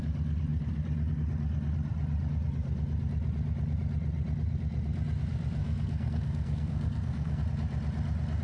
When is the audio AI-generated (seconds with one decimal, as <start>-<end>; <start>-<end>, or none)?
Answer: 5.6-7.4